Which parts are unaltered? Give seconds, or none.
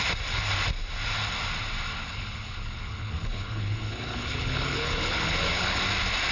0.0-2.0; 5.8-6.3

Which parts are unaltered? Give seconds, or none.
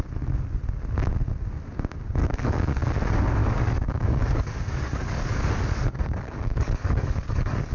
0.0-2.2; 2.8-3.4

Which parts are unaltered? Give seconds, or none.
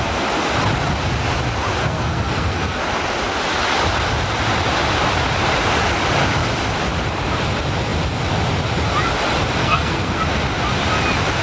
0.0-1.8; 2.8-9.6; 10.2-11.4